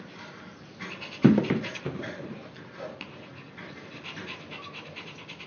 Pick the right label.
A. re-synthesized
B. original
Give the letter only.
B